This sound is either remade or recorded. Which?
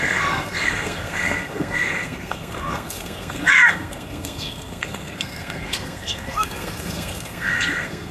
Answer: remade